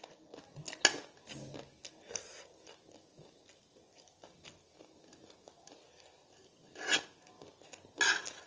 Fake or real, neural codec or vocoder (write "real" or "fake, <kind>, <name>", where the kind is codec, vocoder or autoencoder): real